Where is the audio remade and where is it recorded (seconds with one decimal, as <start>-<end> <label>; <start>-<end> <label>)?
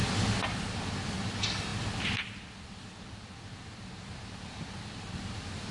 0.0-0.5 recorded; 0.5-5.7 remade